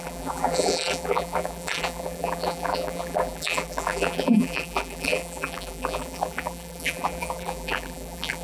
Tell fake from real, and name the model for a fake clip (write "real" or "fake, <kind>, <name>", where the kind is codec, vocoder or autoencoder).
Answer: fake, vocoder, BigVGAN v2